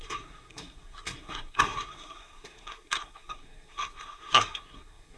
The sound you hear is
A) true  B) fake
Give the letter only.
B